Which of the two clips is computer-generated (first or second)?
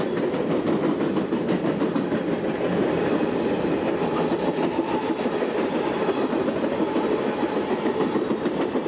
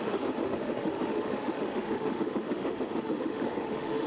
second